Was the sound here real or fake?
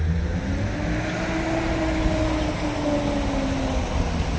real